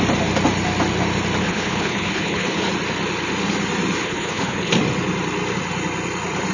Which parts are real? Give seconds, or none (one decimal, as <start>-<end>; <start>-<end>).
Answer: 0.0-1.4; 2.7-4.0; 4.7-6.5